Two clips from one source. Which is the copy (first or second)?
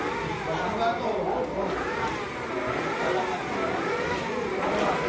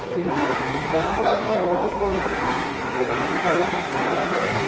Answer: second